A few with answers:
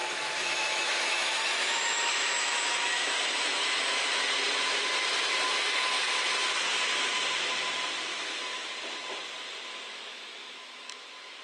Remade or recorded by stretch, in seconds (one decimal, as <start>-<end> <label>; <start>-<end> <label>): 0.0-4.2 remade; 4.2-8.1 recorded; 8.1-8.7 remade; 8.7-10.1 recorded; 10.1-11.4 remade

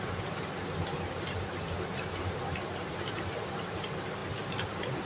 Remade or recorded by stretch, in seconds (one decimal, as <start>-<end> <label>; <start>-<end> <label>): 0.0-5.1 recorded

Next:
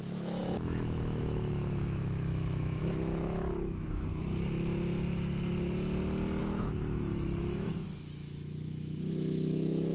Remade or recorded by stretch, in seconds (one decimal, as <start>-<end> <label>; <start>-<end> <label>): 0.0-4.1 remade; 4.1-6.4 recorded; 6.4-9.9 remade

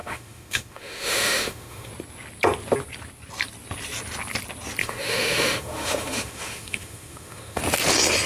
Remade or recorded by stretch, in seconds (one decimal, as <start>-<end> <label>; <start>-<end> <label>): 0.0-1.9 remade; 1.9-4.8 recorded; 4.8-7.6 remade; 7.6-8.3 recorded